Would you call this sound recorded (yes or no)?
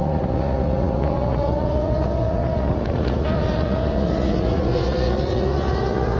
no